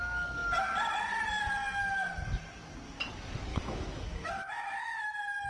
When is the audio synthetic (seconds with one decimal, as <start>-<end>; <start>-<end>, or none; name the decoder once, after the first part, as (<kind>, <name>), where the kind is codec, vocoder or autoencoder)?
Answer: 3.5-5.1 (autoencoder, DAC-VAE)